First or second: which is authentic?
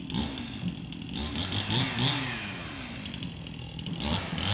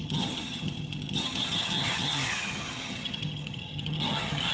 first